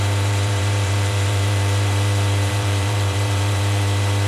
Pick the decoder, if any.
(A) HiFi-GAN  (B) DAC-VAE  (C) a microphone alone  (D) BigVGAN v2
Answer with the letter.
D